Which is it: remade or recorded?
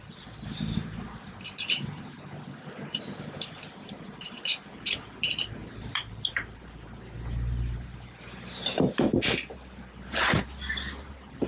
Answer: remade